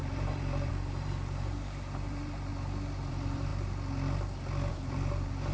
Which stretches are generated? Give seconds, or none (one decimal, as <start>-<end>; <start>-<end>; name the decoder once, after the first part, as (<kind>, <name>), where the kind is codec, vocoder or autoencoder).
0.0-2.5 (vocoder, BigVGAN v2); 3.1-3.5; 4.7-5.5